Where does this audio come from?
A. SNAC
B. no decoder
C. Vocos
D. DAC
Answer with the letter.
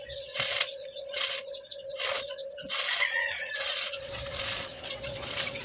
C